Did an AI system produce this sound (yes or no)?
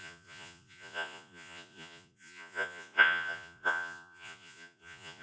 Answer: yes